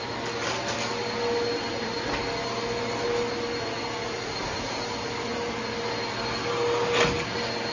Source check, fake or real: real